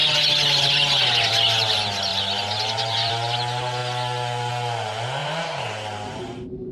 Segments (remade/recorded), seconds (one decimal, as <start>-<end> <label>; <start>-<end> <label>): 0.0-2.1 recorded; 2.1-3.1 remade; 3.1-5.2 recorded; 5.2-6.7 remade